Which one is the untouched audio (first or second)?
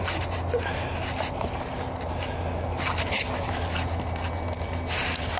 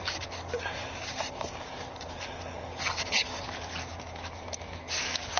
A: first